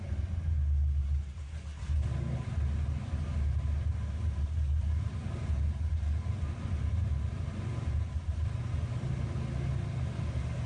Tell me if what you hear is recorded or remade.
recorded